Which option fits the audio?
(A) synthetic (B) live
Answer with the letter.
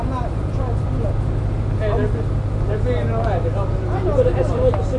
B